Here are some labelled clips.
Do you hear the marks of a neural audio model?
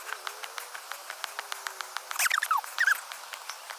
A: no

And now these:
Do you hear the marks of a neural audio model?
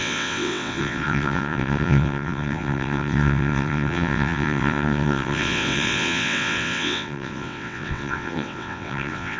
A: yes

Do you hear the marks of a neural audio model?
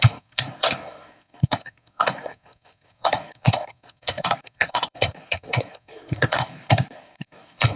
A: yes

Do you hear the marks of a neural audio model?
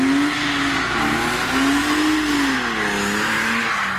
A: no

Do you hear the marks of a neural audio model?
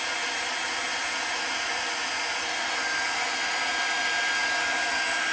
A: no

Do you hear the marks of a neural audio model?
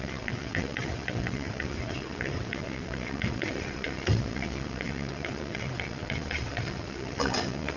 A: yes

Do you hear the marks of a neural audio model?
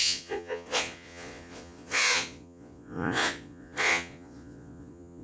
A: yes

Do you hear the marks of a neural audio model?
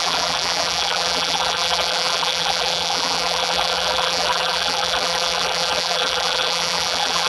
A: yes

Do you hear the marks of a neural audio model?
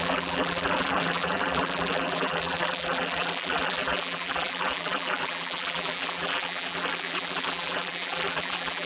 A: yes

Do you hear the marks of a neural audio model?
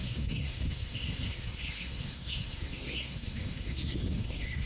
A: yes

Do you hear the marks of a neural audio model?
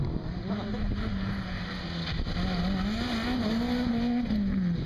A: no